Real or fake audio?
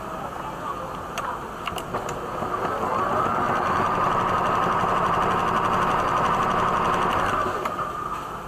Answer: real